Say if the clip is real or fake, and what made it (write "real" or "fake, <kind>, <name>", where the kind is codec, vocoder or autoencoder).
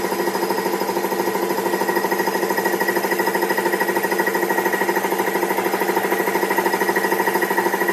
real